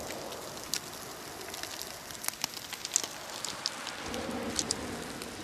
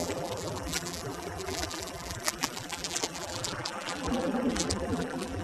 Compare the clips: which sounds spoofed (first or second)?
second